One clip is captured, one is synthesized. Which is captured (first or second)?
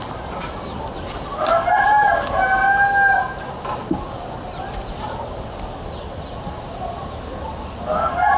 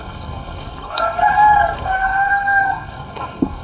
first